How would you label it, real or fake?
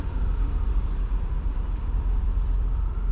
fake